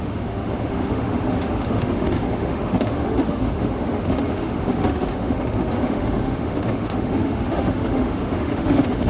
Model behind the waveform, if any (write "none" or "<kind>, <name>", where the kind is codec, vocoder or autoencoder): autoencoder, DAC-VAE